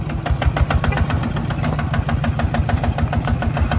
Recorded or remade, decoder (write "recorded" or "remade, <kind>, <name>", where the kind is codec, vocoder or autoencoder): recorded